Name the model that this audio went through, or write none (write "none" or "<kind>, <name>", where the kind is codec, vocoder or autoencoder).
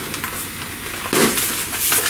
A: none